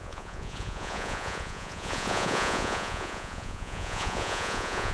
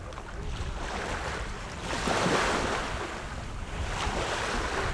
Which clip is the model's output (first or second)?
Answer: first